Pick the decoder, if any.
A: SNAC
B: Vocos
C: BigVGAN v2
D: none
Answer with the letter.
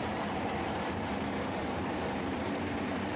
C